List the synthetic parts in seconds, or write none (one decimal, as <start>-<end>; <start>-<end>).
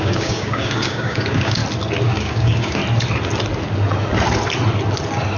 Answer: 0.0-1.6; 2.1-2.8